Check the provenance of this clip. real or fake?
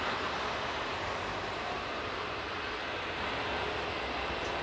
real